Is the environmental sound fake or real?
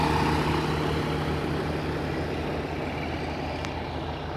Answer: real